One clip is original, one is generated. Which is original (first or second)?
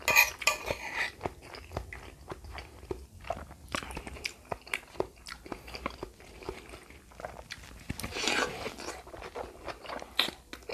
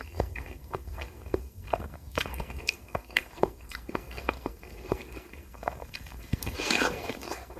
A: first